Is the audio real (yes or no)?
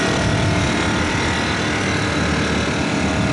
yes